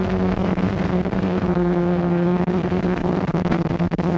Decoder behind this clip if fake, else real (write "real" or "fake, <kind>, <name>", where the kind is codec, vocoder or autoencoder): fake, codec, SNAC